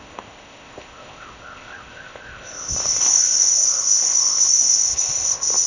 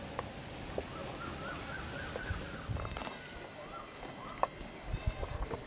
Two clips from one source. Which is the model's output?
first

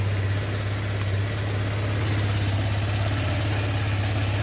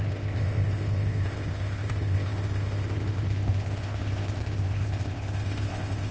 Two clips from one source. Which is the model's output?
second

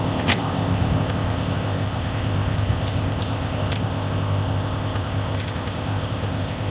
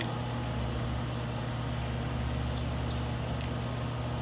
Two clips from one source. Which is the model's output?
first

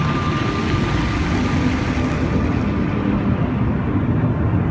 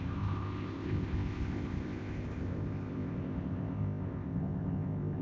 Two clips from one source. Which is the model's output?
second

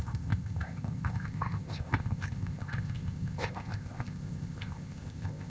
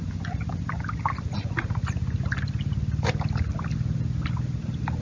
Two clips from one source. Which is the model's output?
first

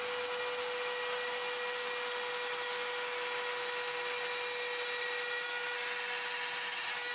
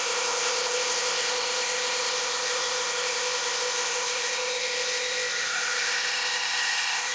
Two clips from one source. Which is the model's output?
second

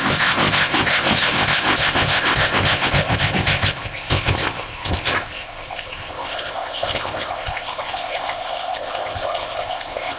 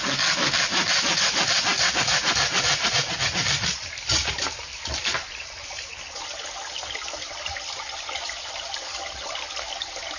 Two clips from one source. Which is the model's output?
first